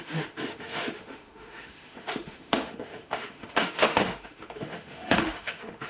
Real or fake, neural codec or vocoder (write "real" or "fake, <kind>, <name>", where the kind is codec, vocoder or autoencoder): fake, autoencoder, DAC-VAE